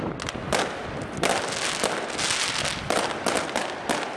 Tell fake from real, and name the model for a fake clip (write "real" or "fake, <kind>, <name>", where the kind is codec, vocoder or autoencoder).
real